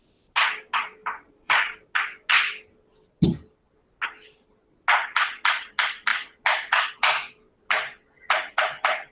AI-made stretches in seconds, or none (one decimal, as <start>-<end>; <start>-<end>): 1.0-1.8